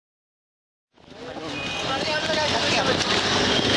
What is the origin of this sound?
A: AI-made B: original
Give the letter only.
B